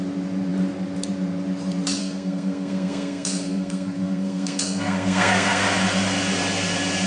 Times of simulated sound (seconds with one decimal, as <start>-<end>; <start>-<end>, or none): 2.0-5.6